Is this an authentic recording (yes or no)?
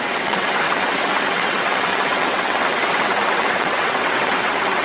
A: no